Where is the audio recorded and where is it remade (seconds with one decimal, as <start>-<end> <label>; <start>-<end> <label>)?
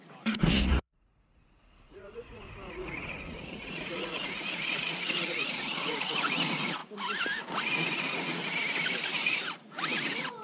0.0-6.8 remade; 6.8-7.4 recorded; 7.4-8.4 remade; 8.4-9.2 recorded; 9.2-10.4 remade